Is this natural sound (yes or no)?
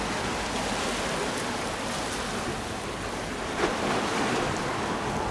yes